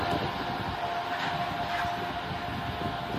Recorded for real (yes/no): yes